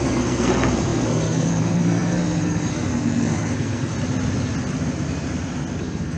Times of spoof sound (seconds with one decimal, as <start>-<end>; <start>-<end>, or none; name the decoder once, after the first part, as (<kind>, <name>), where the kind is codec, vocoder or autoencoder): 0.0-3.9 (codec, SNAC); 5.8-6.2